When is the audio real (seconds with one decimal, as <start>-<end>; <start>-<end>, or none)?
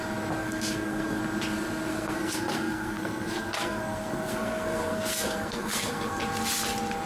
0.0-0.4; 1.2-1.9; 6.2-7.1